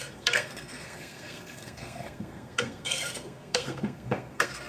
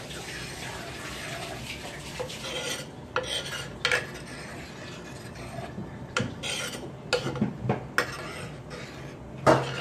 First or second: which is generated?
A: first